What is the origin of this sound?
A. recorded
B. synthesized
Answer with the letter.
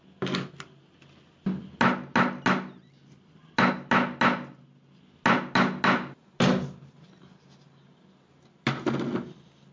A